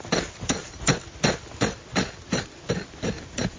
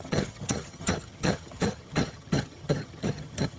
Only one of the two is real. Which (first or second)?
first